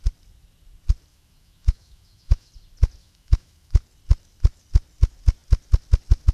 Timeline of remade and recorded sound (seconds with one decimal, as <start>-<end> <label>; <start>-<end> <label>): 0.0-1.1 recorded; 1.1-2.5 remade; 2.5-3.0 recorded; 3.0-3.8 remade; 3.8-6.3 recorded